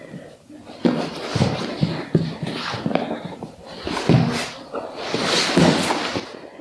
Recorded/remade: recorded